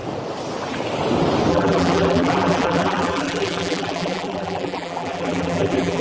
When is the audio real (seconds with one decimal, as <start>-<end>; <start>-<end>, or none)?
0.0-1.5